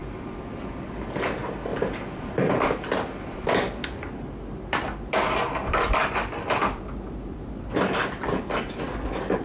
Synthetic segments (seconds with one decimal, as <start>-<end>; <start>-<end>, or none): 1.7-2.5